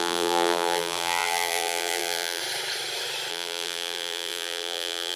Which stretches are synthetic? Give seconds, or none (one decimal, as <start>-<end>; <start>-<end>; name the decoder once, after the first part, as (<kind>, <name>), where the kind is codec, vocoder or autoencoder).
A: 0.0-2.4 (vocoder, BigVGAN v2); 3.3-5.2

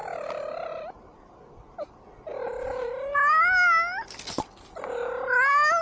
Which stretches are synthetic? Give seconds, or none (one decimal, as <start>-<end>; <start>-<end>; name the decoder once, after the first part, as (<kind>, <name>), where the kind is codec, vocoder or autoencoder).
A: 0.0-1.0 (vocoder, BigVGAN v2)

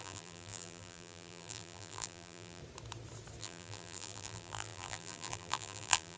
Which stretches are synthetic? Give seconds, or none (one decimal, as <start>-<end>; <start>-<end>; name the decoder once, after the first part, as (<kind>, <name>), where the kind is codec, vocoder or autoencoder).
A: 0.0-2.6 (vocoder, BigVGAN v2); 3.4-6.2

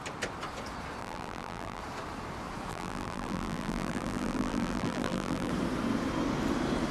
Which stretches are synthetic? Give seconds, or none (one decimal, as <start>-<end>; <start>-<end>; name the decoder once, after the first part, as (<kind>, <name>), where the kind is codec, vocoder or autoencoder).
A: 1.0-1.8 (vocoder, BigVGAN v2); 2.7-5.5